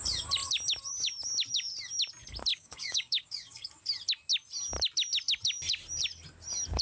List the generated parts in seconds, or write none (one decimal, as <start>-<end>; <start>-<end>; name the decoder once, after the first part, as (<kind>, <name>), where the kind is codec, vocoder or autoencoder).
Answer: 2.5-3.7 (codec, DAC)